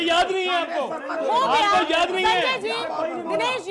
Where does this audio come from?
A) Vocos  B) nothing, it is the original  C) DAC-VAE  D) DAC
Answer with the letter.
B